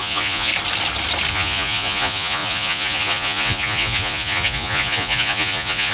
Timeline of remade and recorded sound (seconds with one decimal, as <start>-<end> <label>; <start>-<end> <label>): 0.0-0.5 remade; 0.5-1.3 recorded; 1.3-5.9 remade